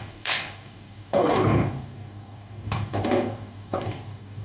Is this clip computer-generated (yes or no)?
yes